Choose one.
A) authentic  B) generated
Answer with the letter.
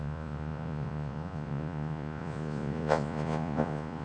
B